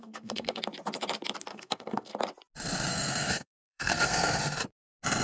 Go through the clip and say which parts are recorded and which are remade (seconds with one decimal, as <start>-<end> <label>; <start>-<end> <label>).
0.0-0.6 remade; 0.6-1.5 recorded; 1.5-2.1 remade; 2.1-2.9 recorded; 2.9-4.4 remade; 4.4-5.2 recorded